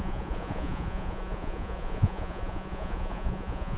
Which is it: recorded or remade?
remade